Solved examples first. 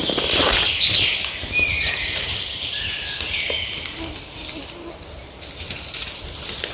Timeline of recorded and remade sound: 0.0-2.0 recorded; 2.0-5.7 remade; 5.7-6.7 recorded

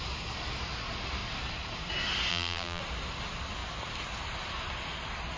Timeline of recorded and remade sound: 0.0-2.3 recorded; 2.3-2.8 remade; 2.8-5.4 recorded